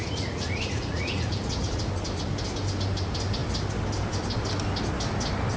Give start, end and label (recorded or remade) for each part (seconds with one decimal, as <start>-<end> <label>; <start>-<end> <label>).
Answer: 0.0-1.8 remade; 1.8-5.6 recorded

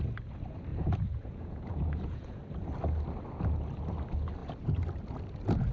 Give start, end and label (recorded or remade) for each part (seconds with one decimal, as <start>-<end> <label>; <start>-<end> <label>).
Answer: 0.0-0.7 recorded; 0.7-2.4 remade; 2.4-5.7 recorded

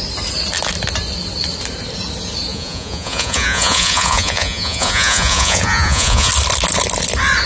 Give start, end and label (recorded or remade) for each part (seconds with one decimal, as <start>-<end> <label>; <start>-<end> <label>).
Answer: 0.0-2.5 recorded; 2.5-6.3 remade; 6.3-7.5 recorded

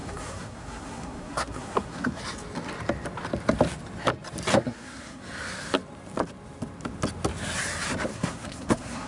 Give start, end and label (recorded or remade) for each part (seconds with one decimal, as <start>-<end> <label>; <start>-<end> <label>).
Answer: 0.0-2.2 remade; 2.2-4.5 recorded; 4.5-5.2 remade; 5.2-8.1 recorded; 8.1-9.1 remade

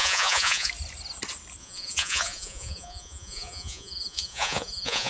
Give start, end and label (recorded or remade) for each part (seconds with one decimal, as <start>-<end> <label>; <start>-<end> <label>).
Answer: 0.0-0.7 remade; 0.7-1.6 recorded; 1.6-5.1 remade

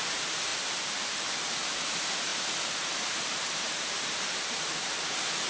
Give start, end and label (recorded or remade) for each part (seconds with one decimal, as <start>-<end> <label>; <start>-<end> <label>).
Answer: 0.0-5.5 remade

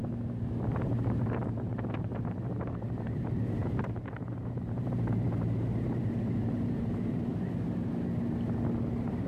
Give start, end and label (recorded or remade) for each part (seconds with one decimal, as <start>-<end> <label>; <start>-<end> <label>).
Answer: 0.0-0.8 recorded; 0.8-7.3 remade; 7.3-8.9 recorded; 8.9-9.3 remade

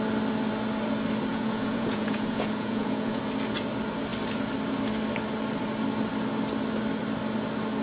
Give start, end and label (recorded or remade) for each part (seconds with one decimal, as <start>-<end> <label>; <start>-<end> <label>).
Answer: 0.0-1.3 recorded; 1.3-3.2 remade; 3.2-7.8 recorded